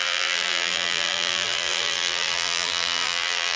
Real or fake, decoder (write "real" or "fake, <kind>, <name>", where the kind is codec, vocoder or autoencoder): fake, vocoder, BigVGAN v2